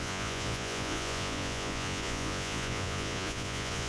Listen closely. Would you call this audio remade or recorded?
remade